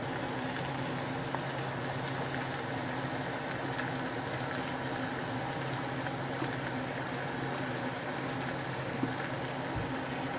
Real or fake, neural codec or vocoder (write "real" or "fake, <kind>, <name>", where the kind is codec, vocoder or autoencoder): real